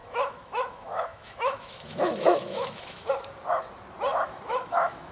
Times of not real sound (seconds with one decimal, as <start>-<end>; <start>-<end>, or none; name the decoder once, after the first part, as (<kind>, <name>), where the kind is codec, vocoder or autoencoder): 0.0-3.1 (autoencoder, DAC-VAE); 4.1-5.1